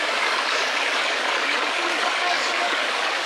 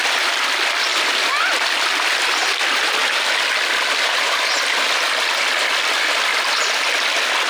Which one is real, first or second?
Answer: second